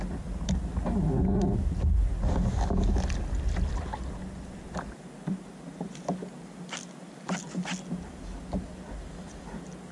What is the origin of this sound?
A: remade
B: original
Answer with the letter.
B